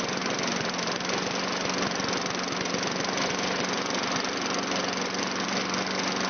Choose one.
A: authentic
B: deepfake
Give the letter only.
A